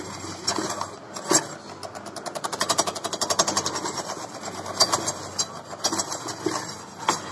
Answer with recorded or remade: recorded